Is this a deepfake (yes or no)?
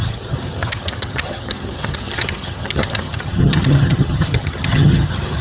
yes